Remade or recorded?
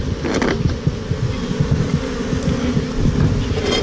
recorded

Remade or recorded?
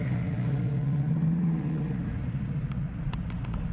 remade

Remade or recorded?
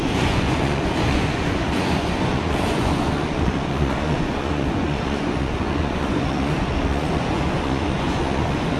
remade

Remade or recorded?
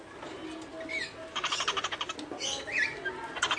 recorded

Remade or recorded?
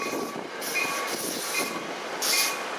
recorded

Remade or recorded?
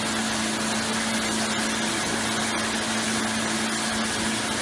recorded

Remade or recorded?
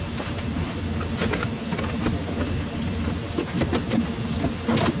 recorded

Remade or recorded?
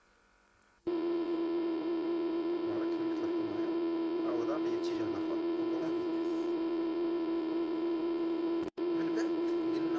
remade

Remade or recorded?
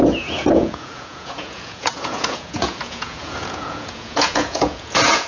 remade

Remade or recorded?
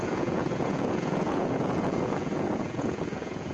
remade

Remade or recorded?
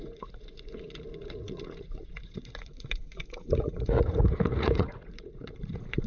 remade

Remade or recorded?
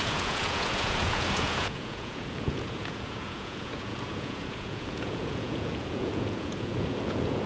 remade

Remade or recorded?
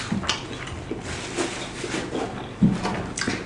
recorded